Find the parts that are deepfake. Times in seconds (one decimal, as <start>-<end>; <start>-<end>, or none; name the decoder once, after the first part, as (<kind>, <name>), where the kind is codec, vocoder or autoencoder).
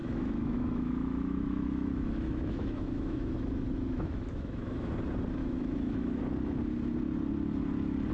0.0-4.9 (autoencoder, DAC-VAE); 5.4-6.2